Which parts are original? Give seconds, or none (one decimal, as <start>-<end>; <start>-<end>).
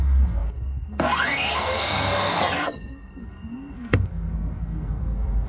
none